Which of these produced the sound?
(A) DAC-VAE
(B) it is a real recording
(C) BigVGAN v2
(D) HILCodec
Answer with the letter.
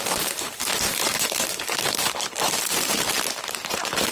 C